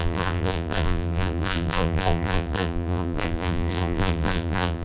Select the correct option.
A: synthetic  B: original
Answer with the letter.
A